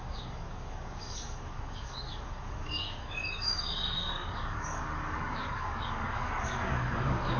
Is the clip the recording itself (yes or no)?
no